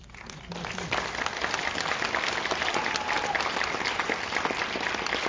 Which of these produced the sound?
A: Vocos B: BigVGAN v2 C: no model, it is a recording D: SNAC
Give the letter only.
C